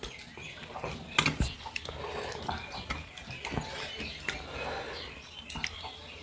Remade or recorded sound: recorded